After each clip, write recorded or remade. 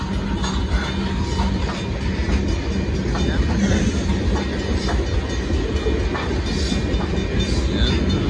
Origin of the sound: recorded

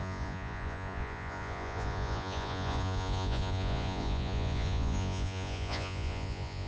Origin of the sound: remade